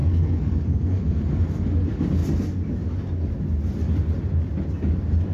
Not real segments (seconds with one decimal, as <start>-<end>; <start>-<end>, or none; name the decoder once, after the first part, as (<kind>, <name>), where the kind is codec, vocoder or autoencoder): 0.0-1.2 (codec, SNAC)